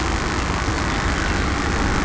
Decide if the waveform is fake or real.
real